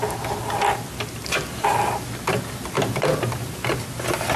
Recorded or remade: recorded